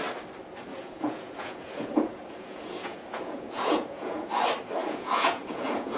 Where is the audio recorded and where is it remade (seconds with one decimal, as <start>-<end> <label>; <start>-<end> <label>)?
0.0-0.7 recorded; 0.7-4.3 remade; 4.3-4.8 recorded; 4.8-6.0 remade